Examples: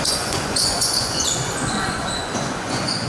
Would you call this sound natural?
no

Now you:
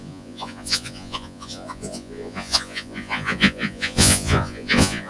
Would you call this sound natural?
no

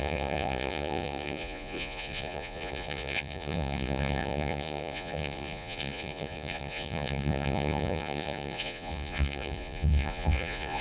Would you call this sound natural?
no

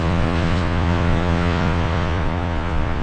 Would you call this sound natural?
no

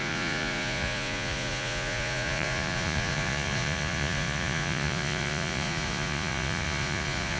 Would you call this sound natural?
no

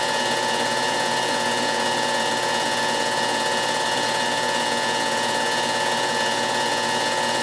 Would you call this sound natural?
no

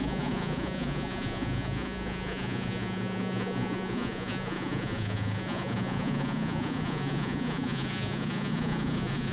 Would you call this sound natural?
no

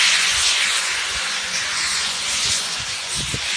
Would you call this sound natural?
no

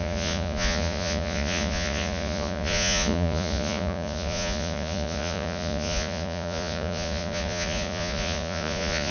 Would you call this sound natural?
no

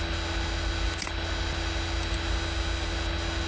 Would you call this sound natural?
yes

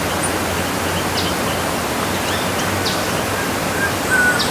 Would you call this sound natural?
yes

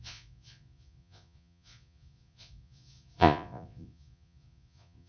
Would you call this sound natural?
no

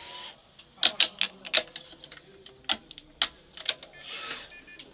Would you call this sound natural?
yes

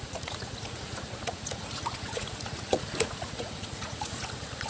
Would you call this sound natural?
no